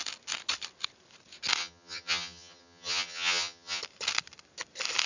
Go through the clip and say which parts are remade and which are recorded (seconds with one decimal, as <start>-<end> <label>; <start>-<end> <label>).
0.0-1.6 recorded; 1.6-3.8 remade; 3.8-5.1 recorded